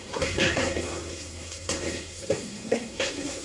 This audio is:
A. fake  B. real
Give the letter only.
A